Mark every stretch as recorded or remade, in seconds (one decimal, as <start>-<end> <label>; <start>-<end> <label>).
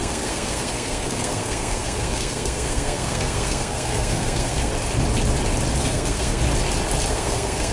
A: 0.0-4.7 remade; 4.7-5.8 recorded; 5.8-6.4 remade; 6.4-7.1 recorded; 7.1-7.7 remade